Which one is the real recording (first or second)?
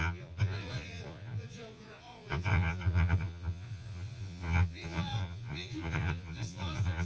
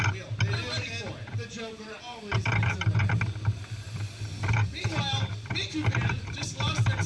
second